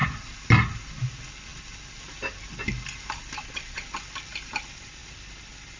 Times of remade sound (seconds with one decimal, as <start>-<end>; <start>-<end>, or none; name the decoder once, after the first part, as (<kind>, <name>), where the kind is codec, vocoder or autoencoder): 3.4-3.9 (vocoder, Vocos)